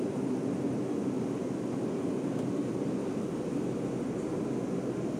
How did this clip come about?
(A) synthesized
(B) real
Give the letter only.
B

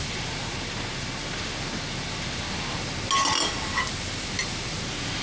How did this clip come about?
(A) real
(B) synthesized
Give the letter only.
A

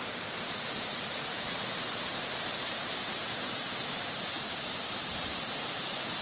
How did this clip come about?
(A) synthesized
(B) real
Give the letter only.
A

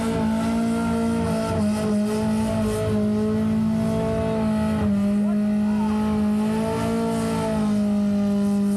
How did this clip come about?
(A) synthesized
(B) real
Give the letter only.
B